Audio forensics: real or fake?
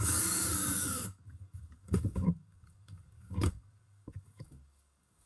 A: fake